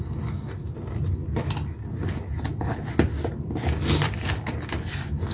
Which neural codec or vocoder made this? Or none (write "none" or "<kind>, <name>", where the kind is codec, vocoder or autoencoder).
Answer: none